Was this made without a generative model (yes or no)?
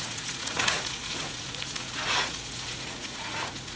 no